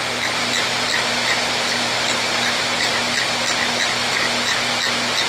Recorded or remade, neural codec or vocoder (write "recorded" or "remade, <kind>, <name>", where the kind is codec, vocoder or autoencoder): recorded